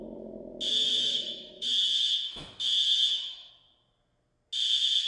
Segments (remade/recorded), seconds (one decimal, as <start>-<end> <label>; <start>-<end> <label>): 0.0-0.7 recorded; 0.7-3.5 remade; 3.5-5.1 recorded